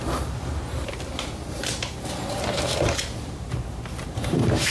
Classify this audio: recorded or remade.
remade